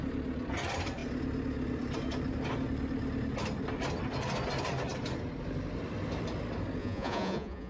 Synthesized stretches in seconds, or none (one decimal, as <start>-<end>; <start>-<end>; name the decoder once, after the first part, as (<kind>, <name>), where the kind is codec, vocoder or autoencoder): 6.8-7.7 (vocoder, Vocos)